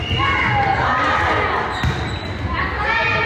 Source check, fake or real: real